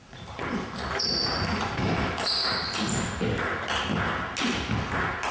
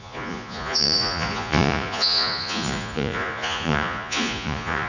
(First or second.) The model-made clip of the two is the second